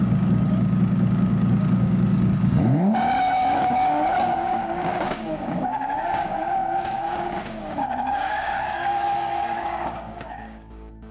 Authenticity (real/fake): fake